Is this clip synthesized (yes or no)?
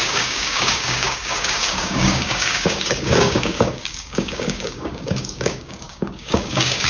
yes